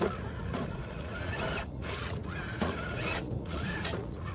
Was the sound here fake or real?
fake